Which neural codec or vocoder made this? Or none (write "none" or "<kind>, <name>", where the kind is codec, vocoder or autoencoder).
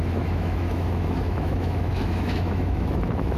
autoencoder, DAC-VAE